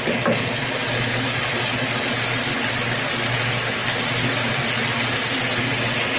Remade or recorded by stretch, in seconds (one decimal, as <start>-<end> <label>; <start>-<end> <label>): 0.0-6.2 recorded